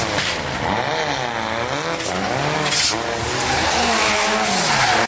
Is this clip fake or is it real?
real